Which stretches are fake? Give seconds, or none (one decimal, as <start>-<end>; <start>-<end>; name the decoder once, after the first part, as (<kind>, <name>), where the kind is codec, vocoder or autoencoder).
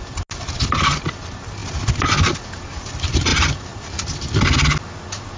none